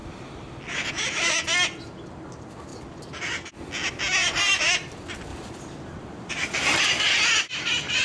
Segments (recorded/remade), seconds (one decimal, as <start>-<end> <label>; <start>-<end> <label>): 0.0-5.3 recorded; 5.3-6.8 remade; 6.8-8.0 recorded